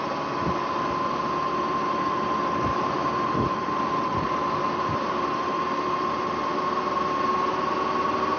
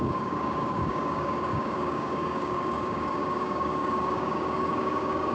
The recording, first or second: first